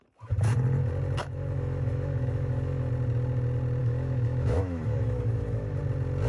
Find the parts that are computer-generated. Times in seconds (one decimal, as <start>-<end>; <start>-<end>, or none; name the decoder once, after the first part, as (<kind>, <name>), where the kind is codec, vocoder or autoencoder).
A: 1.2-2.9 (autoencoder, DAC-VAE); 3.8-5.8